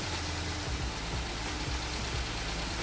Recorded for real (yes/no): yes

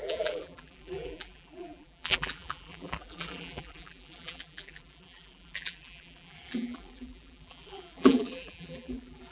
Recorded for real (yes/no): no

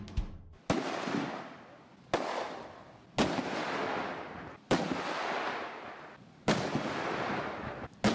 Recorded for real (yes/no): yes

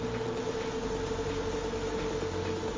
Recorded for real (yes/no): yes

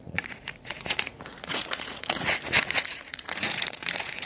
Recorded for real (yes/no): no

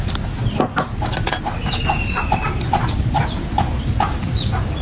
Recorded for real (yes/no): yes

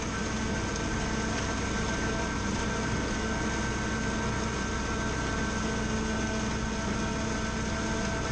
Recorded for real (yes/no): yes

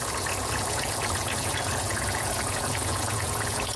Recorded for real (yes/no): no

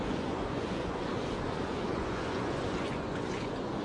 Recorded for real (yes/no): no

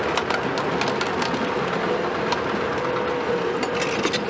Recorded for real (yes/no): yes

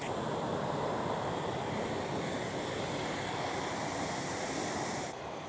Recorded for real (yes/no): yes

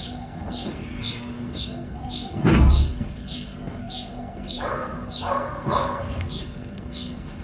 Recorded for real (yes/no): no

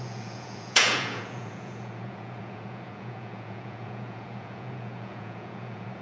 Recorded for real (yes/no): no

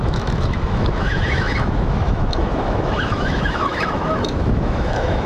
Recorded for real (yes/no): no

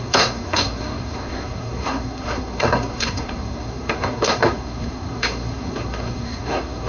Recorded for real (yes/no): no